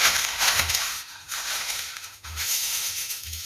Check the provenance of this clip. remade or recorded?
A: remade